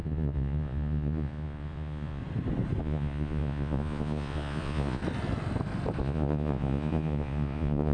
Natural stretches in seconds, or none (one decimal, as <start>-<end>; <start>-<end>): 2.2-2.8; 5.0-6.0